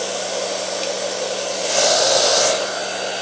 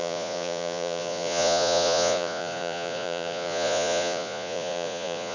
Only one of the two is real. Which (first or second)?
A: first